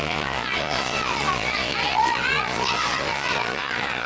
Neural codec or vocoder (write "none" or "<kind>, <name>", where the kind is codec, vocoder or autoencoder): vocoder, Vocos